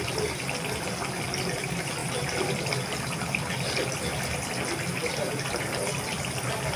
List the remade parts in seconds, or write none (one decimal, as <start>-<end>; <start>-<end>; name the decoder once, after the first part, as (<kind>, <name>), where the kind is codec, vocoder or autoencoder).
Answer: none